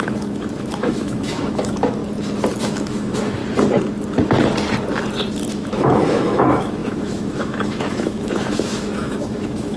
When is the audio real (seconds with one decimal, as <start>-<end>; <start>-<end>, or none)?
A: 2.0-2.6; 3.4-5.5